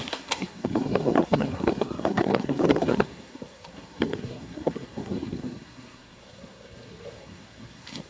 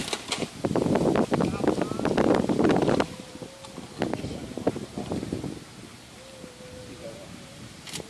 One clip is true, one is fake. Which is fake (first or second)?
first